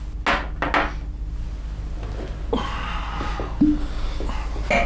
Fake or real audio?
real